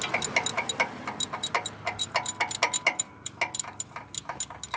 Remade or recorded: recorded